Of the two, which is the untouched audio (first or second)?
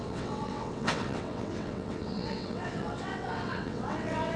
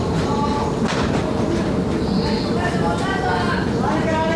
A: second